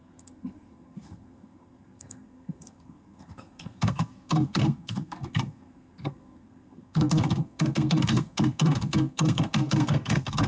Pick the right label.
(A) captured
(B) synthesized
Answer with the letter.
B